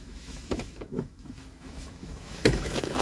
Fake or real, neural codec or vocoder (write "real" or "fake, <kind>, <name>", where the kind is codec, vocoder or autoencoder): fake, autoencoder, DAC-VAE